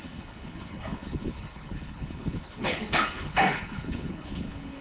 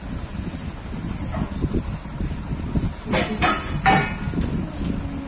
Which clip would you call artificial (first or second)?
first